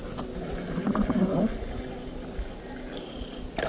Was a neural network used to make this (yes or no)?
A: no